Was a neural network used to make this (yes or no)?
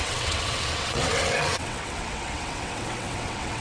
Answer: yes